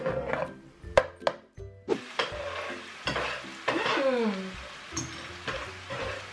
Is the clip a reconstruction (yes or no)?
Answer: no